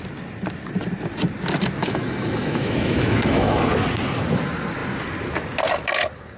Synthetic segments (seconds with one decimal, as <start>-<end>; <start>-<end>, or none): 1.8-3.7